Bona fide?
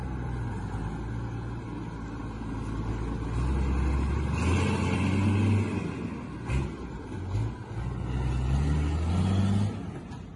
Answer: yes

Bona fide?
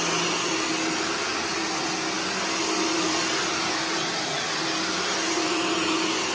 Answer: yes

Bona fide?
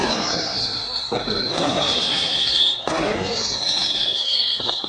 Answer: no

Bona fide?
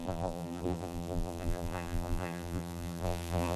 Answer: no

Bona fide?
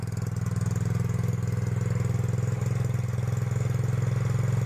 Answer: yes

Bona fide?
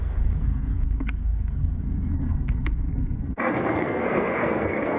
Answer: no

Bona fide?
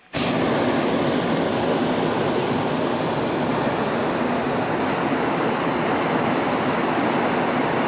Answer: yes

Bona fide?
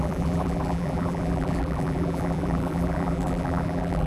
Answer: no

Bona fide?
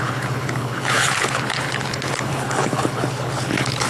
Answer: no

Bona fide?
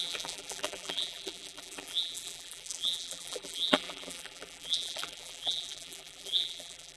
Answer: no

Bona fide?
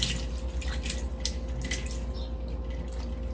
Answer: yes